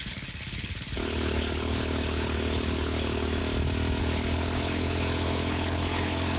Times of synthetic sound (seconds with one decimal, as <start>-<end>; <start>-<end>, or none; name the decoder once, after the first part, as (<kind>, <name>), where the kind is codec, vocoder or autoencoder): 0.0-3.4 (codec, HILCodec); 4.0-6.4